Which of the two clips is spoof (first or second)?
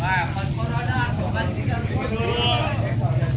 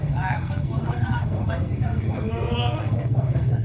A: second